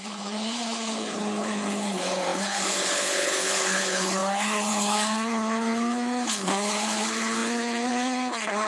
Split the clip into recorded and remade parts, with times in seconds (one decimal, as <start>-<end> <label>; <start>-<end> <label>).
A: 0.0-8.7 remade